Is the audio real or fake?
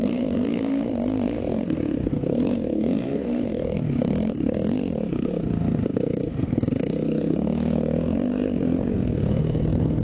fake